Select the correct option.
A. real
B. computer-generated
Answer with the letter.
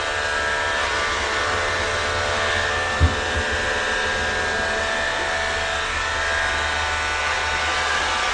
A